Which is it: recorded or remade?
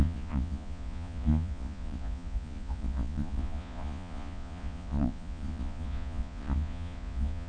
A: remade